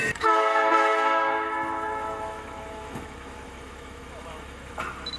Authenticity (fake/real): fake